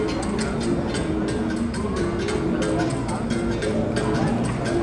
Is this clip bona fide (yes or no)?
yes